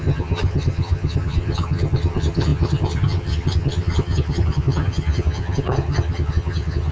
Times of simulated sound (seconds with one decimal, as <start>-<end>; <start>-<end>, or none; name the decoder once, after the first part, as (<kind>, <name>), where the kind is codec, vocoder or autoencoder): 0.0-6.9 (vocoder, HiFi-GAN)